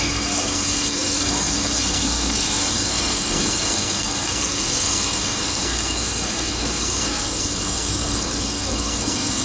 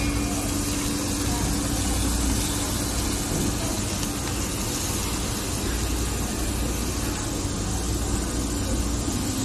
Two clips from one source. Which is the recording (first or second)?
second